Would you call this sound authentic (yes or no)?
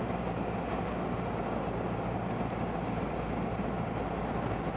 yes